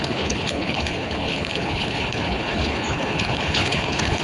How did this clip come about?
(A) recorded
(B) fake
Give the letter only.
B